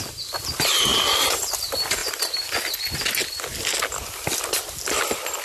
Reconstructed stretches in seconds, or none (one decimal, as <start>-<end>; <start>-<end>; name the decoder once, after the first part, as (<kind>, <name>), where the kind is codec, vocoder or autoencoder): none